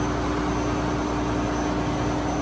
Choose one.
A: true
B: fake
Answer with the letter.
A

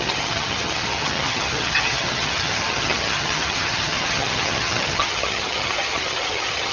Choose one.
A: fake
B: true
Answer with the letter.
A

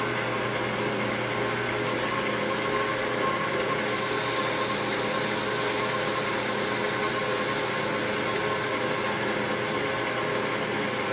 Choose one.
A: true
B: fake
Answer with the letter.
A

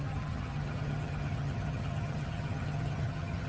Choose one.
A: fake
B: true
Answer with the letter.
A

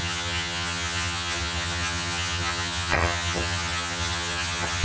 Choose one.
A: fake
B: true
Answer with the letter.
A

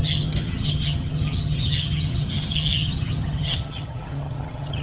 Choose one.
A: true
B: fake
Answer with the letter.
B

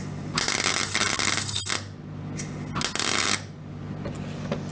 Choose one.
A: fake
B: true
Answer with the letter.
B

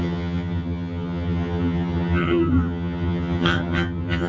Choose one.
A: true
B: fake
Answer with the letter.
B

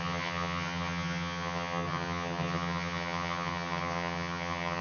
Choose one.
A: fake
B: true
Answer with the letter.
A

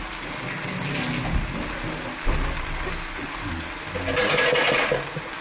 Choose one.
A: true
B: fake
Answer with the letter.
A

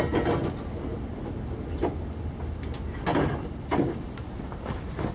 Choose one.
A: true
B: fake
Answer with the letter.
A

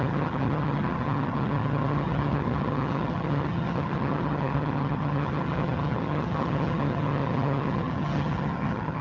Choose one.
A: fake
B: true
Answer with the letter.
A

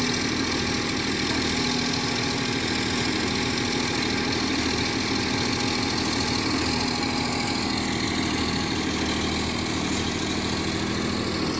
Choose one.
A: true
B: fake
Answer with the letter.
A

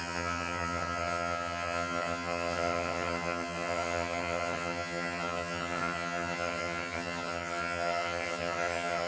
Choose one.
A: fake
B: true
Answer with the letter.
A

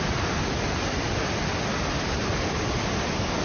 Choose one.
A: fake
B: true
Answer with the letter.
B